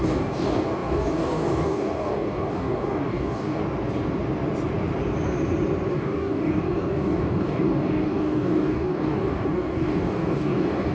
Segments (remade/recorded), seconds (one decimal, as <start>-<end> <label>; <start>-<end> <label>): 0.0-3.6 remade; 3.6-5.9 recorded; 5.9-10.9 remade